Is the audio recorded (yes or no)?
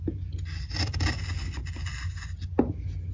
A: yes